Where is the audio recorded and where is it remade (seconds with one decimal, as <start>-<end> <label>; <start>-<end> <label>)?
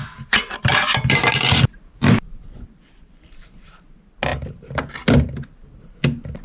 0.0-3.8 remade; 3.8-6.4 recorded